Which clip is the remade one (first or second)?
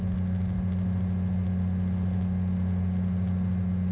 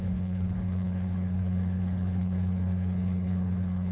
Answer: second